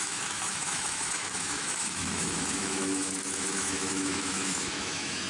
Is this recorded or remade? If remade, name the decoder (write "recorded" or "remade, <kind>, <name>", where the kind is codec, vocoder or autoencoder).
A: remade, autoencoder, DAC-VAE